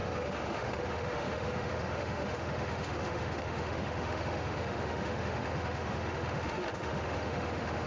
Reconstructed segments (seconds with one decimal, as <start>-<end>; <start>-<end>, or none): 0.0-7.9